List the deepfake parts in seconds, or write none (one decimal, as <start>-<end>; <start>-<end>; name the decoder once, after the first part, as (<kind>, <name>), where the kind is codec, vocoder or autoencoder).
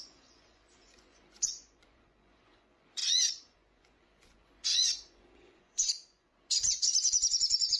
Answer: 0.0-7.8 (vocoder, Vocos)